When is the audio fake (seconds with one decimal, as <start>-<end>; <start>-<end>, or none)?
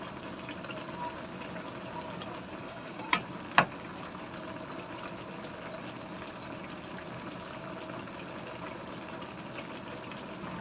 2.6-3.1